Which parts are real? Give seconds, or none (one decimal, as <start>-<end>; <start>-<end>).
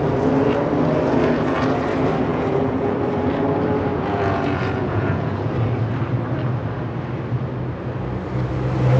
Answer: 0.0-2.3; 3.0-3.9; 5.5-9.0